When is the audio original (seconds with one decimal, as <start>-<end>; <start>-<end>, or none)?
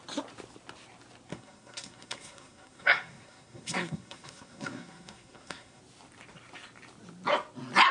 0.0-1.3; 5.8-7.9